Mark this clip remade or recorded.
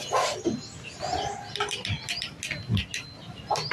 recorded